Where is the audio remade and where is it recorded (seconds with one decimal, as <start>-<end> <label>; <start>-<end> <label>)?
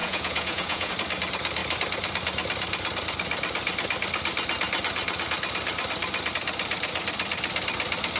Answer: 0.0-0.9 remade; 0.9-8.2 recorded